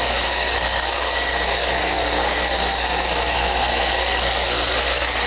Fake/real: fake